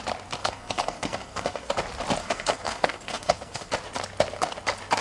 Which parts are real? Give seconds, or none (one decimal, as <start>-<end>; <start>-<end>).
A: 0.0-0.4; 1.7-2.2; 3.7-5.0